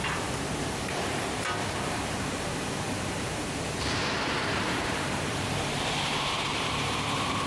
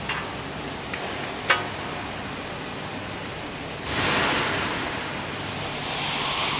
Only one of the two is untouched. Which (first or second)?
second